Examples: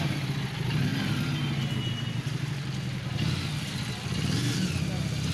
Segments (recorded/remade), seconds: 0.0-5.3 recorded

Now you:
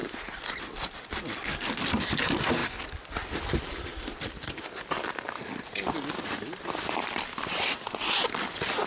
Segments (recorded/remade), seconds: 0.0-0.6 recorded; 0.6-2.6 remade; 2.6-3.6 recorded; 3.6-8.9 remade